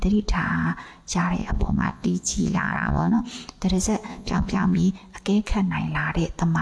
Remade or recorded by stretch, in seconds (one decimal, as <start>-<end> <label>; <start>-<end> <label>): 0.0-1.4 recorded; 1.4-3.2 remade; 3.2-4.1 recorded; 4.1-4.9 remade; 4.9-6.6 recorded

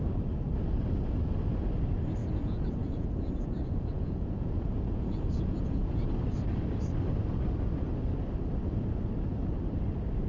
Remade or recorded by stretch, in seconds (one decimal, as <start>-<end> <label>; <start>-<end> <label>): 0.0-2.2 recorded; 2.2-6.1 remade; 6.1-10.3 recorded

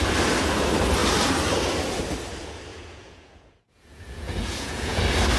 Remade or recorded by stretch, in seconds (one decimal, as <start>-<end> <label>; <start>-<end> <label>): 0.0-2.7 recorded; 2.7-5.0 remade; 5.0-5.4 recorded

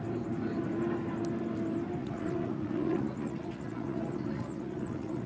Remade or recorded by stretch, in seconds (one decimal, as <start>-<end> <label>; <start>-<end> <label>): 0.0-2.0 recorded; 2.0-5.3 remade